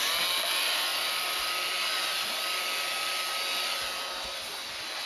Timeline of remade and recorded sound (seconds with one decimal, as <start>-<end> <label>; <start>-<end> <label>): 0.0-5.1 recorded